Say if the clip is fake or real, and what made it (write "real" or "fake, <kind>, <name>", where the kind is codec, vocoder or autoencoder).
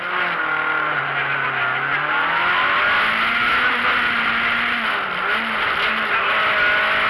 real